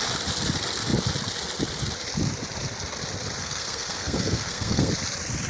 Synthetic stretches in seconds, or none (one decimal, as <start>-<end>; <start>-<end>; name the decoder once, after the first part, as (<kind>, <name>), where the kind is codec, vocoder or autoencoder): 3.4-4.9 (codec, SNAC)